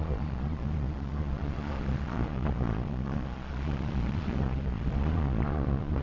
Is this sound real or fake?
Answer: fake